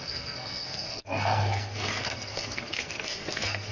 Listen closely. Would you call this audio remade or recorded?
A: remade